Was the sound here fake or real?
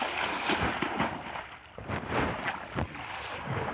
real